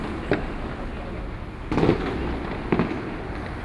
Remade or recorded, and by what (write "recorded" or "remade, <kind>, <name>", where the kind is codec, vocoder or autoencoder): recorded